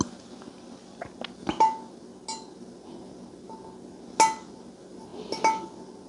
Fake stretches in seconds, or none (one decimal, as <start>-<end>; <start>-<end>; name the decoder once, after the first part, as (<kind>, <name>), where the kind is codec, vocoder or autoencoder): none